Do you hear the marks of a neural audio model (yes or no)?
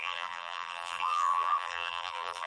yes